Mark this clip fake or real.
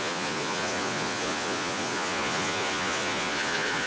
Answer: fake